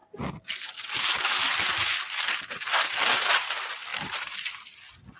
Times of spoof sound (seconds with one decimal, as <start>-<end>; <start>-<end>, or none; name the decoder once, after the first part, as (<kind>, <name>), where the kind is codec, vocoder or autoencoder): none